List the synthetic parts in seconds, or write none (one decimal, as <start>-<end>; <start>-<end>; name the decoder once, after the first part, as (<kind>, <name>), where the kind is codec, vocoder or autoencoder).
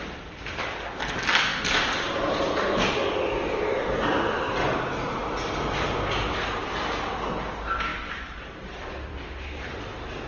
1.5-3.2 (vocoder, BigVGAN v2); 7.9-9.2